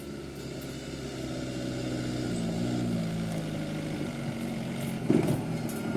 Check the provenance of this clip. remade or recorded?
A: recorded